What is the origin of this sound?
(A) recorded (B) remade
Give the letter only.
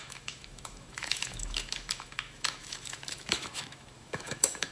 B